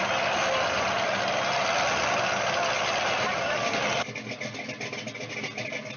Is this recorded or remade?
recorded